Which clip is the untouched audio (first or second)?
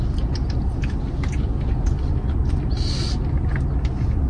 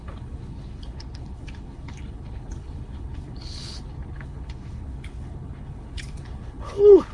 first